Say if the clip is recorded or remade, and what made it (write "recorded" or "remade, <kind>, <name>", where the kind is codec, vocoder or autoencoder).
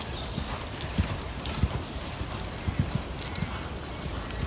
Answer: recorded